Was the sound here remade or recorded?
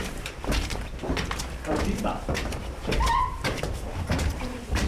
remade